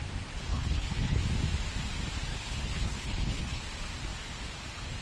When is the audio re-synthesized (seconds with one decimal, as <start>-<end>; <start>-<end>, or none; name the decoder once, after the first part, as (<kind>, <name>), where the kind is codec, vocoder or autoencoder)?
0.5-1.2 (codec, HILCodec); 2.3-3.6